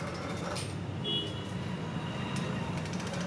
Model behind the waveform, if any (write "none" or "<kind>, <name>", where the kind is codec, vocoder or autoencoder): none